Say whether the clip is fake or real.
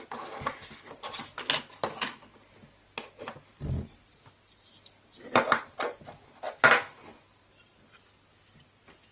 real